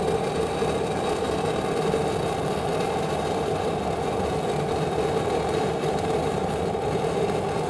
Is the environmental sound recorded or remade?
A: recorded